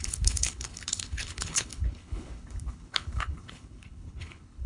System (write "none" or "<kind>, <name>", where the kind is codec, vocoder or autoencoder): codec, HILCodec